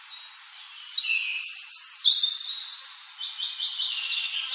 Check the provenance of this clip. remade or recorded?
recorded